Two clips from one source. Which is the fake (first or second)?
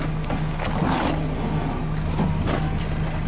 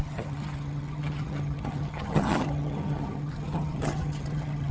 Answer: second